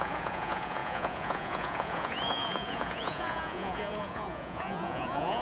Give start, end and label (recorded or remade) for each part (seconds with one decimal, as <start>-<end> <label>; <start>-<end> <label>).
0.0-5.4 remade